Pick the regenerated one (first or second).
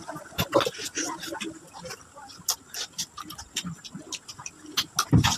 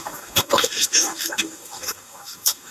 second